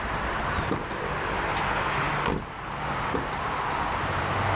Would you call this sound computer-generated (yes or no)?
no